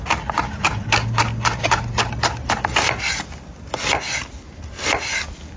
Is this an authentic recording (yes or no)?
yes